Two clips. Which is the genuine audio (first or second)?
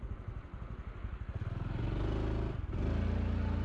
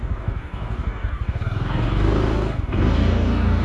first